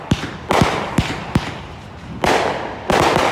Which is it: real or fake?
real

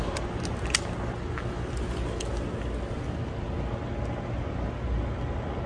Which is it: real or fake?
real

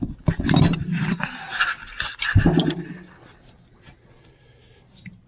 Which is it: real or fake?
real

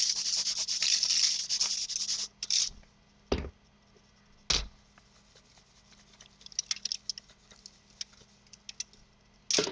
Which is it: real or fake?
real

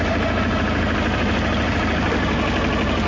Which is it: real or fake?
real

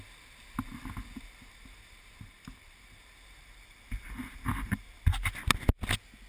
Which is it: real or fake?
real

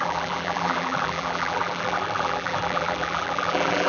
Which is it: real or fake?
fake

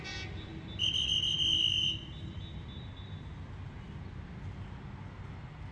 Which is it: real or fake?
real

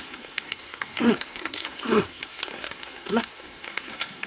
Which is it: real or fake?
fake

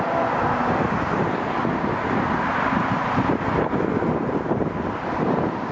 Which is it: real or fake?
real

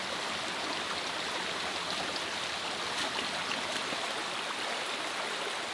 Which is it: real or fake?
real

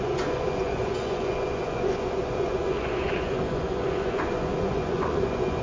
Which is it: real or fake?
fake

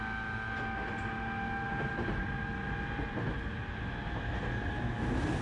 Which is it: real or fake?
real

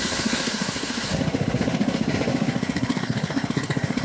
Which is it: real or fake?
fake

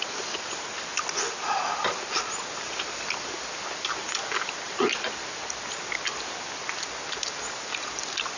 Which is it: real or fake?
real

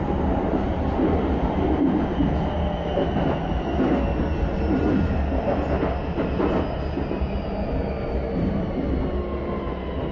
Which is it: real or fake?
real